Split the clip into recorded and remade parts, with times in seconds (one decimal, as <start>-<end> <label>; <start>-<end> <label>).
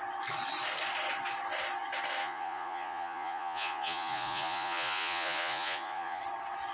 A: 0.0-2.2 recorded; 2.2-6.2 remade; 6.2-6.7 recorded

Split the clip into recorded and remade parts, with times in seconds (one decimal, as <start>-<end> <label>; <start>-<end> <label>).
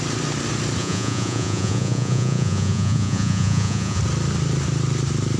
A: 0.0-0.8 recorded; 0.8-4.0 remade; 4.0-5.4 recorded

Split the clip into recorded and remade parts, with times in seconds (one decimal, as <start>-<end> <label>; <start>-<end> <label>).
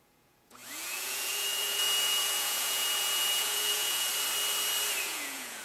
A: 0.0-4.1 remade; 4.1-5.0 recorded; 5.0-5.6 remade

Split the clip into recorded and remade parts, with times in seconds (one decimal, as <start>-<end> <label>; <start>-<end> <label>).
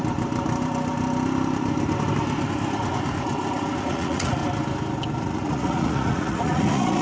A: 0.0-3.8 recorded; 3.8-4.4 remade; 4.4-5.2 recorded; 5.2-7.0 remade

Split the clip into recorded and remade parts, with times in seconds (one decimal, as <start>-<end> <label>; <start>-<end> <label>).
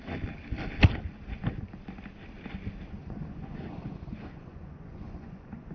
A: 0.0-3.0 recorded; 3.0-5.7 remade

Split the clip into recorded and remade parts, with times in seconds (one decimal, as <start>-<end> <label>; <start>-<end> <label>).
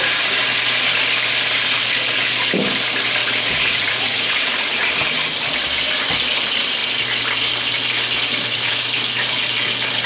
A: 0.0-3.2 recorded; 3.2-4.9 remade; 4.9-10.1 recorded